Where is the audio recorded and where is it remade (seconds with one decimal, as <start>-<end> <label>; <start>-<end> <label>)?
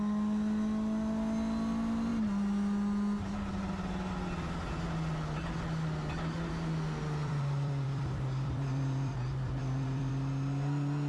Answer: 0.0-7.2 recorded; 7.2-10.1 remade; 10.1-11.1 recorded